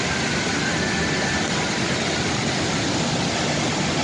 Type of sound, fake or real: real